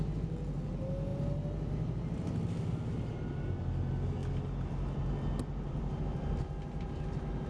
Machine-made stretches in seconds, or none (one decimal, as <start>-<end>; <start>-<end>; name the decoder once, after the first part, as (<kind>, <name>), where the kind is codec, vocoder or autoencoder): none

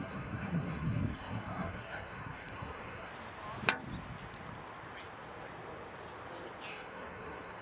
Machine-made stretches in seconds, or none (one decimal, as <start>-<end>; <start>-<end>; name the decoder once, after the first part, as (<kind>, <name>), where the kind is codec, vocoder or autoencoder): 0.0-3.1 (codec, SNAC); 6.7-7.6

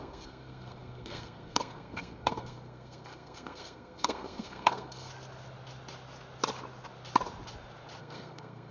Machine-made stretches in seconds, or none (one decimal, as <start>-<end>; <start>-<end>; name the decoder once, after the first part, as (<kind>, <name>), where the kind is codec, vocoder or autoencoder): 0.0-5.1 (codec, SNAC); 8.0-8.7

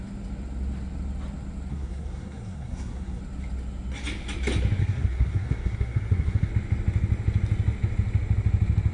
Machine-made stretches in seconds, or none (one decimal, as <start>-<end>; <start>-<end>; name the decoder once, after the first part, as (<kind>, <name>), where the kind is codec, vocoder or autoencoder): 1.7-3.2 (codec, SNAC); 4.8-6.5

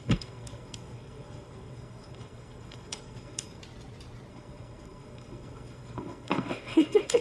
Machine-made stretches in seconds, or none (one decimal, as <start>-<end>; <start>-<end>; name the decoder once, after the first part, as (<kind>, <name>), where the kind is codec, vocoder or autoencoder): 0.0-3.6 (codec, SNAC); 4.3-7.2

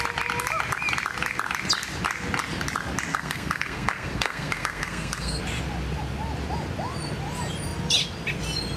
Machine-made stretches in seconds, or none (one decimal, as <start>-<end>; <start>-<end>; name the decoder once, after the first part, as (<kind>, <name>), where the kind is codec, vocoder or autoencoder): 3.1-5.4 (codec, SNAC)

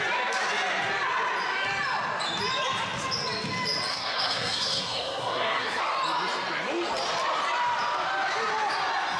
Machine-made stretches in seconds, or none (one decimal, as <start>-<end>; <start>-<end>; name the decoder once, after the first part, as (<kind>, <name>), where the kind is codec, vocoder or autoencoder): 3.9-5.8 (codec, SNAC)

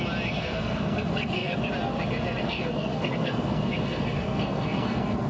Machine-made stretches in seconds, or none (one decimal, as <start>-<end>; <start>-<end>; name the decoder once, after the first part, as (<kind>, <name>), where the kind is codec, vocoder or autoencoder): 0.4-1.6 (codec, SNAC); 2.4-5.3